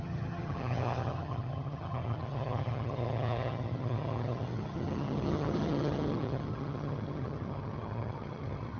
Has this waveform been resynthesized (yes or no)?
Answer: yes